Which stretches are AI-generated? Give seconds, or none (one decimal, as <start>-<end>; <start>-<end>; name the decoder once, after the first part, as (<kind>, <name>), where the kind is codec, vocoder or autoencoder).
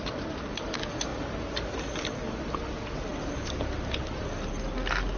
none